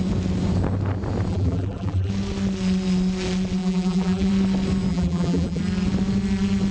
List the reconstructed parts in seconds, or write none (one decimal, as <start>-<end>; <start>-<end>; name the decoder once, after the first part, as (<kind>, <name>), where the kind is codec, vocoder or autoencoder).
1.3-2.1 (vocoder, BigVGAN v2); 3.6-4.3; 4.9-5.6